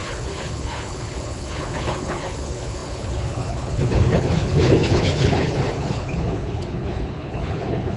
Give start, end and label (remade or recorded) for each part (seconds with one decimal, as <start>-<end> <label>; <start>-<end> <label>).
0.0-8.0 remade